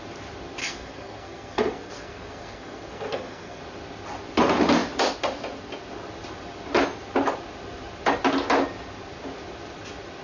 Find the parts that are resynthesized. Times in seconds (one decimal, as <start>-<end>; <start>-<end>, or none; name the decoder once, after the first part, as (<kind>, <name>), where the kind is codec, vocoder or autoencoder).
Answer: 0.6-3.6 (codec, SNAC)